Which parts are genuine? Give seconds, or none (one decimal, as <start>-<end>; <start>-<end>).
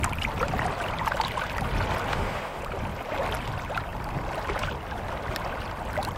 0.0-2.1; 2.6-6.2